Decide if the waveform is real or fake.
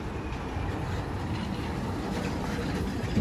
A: real